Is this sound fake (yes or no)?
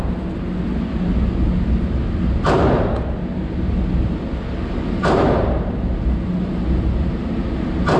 no